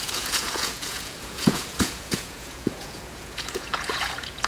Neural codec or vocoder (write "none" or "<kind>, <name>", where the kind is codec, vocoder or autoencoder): vocoder, Vocos